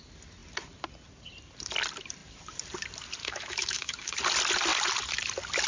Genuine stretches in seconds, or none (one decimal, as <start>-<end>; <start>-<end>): 0.0-3.2; 4.1-5.7